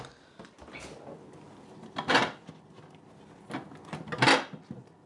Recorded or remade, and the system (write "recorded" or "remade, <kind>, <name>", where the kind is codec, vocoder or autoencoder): recorded